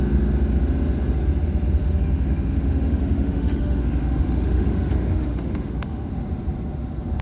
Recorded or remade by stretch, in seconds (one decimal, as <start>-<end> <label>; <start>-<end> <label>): 0.0-1.8 recorded; 1.8-6.1 remade; 6.1-7.2 recorded